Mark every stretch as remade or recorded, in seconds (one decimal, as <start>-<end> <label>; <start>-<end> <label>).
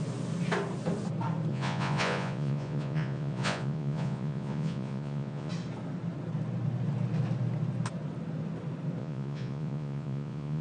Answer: 0.0-1.5 recorded; 1.5-5.5 remade; 5.5-9.0 recorded; 9.0-10.6 remade